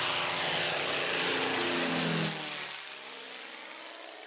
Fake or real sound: real